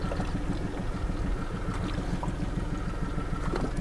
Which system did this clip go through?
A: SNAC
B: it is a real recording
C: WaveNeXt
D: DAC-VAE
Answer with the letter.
B